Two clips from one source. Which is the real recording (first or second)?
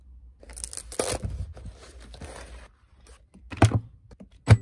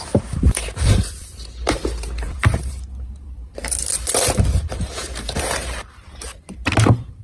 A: first